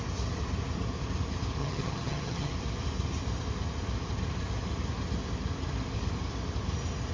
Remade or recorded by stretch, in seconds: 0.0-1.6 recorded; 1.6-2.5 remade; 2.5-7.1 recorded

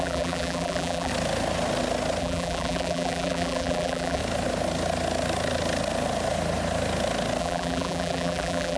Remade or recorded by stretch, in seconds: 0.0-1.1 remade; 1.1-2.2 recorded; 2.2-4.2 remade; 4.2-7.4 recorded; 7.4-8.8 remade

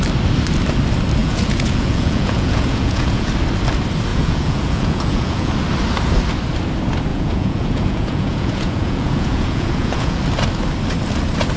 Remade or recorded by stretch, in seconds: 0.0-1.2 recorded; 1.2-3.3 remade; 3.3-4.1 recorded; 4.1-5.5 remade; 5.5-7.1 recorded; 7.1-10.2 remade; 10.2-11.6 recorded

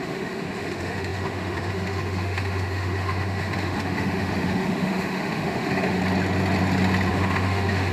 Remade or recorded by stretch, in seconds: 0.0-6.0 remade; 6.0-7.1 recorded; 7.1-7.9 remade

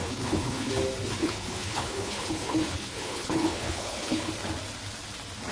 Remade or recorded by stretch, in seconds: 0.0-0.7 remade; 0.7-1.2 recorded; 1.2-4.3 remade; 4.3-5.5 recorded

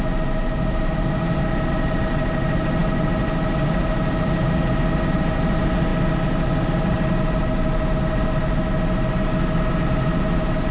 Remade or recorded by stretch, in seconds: 0.0-10.7 recorded